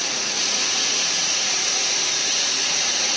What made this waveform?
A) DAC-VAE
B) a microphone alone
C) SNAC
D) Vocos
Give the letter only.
D